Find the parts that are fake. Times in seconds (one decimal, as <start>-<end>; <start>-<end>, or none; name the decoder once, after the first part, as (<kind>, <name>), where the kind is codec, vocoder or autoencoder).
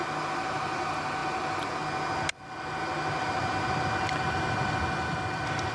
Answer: none